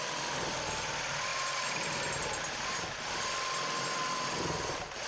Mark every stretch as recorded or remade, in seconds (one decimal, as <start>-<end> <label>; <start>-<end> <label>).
0.0-5.1 recorded